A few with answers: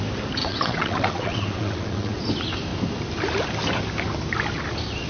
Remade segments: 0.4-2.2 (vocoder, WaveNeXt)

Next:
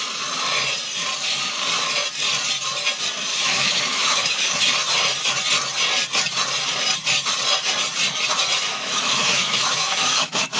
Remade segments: 3.3-4.6 (autoencoder, DAC-VAE); 8.7-10.6

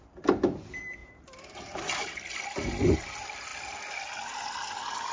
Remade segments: 0.0-3.5 (vocoder, BigVGAN v2)

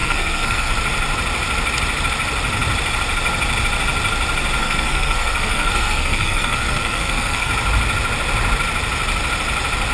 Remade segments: 0.0-0.7 (codec, SNAC); 4.6-7.5

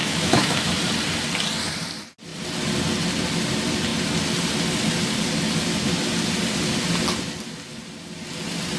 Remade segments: 0.0-0.7 (autoencoder, DAC-VAE)